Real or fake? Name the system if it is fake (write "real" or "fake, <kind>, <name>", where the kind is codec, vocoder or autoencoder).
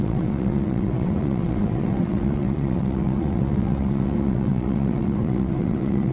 fake, vocoder, WaveNeXt